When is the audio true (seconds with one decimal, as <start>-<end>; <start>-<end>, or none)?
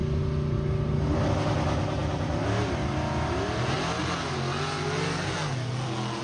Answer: 0.0-6.2